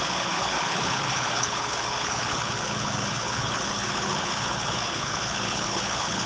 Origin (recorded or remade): remade